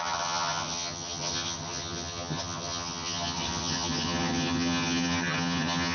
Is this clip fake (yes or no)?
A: yes